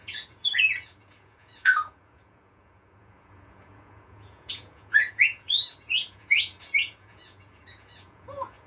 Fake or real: fake